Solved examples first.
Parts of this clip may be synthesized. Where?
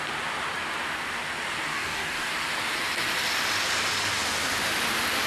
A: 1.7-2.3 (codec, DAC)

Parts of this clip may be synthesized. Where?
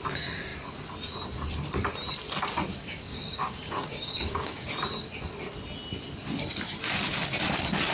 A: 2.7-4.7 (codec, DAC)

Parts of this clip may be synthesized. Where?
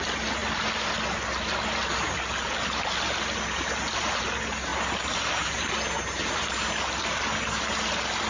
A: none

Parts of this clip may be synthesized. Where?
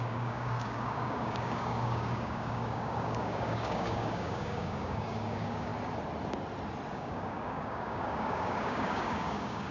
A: 0.0-5.7 (codec, DAC); 6.9-9.7